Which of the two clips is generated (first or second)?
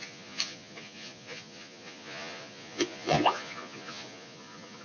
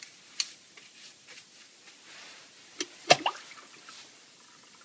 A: first